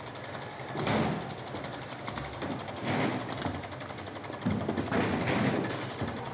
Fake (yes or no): no